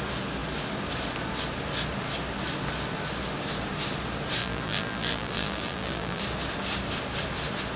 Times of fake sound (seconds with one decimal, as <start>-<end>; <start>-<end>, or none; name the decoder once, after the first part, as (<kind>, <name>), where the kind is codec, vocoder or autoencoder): 4.4-6.2 (vocoder, BigVGAN v2)